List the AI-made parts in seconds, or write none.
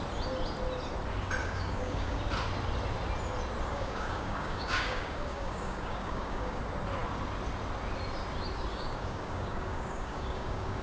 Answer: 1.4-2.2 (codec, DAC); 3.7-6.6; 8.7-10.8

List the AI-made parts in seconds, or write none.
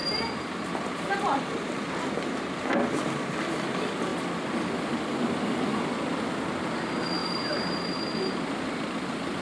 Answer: none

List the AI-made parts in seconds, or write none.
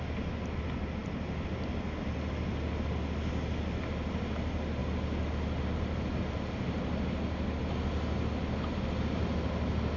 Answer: none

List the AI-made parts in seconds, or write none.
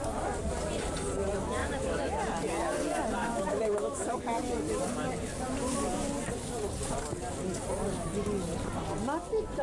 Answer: 1.6-2.2 (autoencoder, DAC-VAE); 3.2-4.1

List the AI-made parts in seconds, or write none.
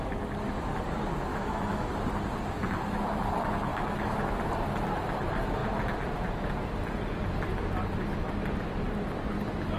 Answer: 1.3-2.0 (autoencoder, DAC-VAE); 3.7-4.4